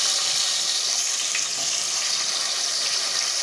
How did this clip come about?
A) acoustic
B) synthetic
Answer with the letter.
B